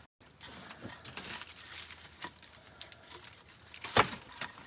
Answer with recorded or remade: recorded